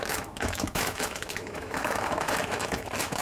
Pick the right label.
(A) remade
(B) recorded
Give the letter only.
A